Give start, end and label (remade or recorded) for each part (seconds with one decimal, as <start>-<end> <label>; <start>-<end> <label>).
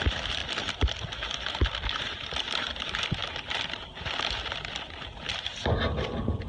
0.0-6.5 recorded